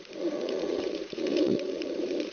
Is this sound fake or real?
fake